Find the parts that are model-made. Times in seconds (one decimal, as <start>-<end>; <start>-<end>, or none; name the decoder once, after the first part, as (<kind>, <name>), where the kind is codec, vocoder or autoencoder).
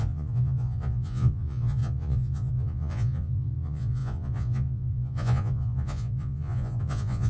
0.0-7.3 (vocoder, Vocos)